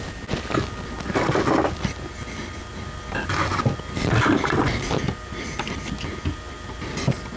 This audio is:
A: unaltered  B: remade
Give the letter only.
A